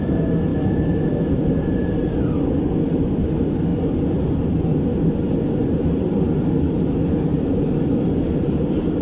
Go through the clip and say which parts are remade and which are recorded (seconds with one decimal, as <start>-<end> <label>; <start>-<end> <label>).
0.0-7.3 recorded; 7.3-7.8 remade; 7.8-9.0 recorded